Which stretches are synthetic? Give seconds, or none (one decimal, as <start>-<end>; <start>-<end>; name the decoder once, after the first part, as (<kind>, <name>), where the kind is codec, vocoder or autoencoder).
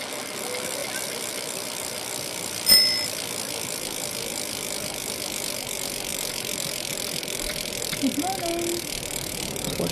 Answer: none